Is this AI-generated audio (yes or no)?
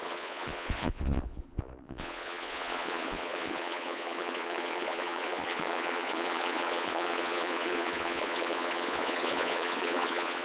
yes